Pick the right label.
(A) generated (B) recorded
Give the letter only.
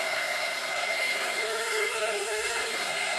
A